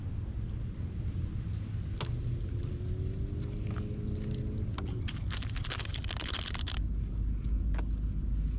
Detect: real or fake real